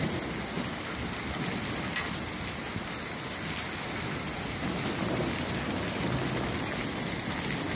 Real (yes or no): yes